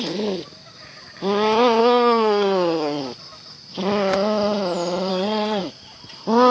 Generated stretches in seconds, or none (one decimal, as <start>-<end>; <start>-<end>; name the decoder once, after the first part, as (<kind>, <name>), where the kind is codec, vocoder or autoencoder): 1.8-3.0 (codec, SNAC); 5.1-5.6